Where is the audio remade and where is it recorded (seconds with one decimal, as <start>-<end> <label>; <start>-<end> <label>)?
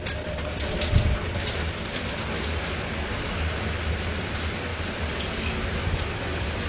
0.0-6.7 recorded